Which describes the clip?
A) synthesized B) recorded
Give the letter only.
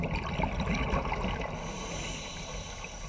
B